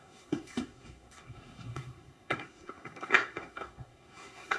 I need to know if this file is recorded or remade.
remade